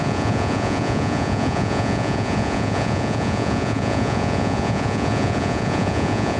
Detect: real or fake fake